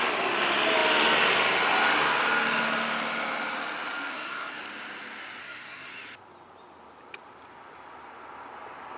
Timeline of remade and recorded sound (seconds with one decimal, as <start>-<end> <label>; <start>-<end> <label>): 0.0-4.1 recorded; 4.1-4.6 remade; 4.6-5.4 recorded; 5.4-5.9 remade; 5.9-9.0 recorded